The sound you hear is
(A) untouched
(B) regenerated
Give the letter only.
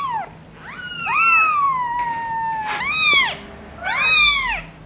A